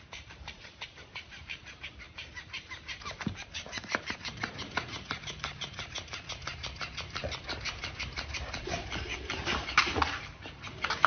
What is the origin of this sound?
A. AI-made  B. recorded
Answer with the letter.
A